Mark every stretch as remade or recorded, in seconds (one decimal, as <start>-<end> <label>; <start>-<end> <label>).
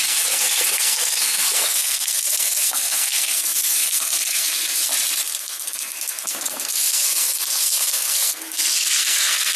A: 0.0-4.9 remade; 4.9-5.4 recorded; 5.4-9.6 remade